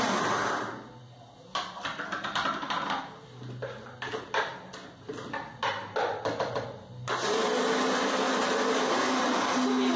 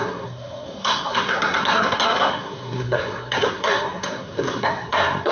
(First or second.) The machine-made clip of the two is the second